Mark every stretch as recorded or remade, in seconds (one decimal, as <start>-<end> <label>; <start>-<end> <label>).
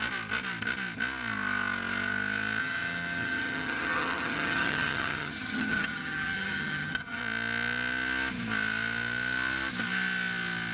0.0-2.6 recorded; 2.6-7.2 remade; 7.2-10.7 recorded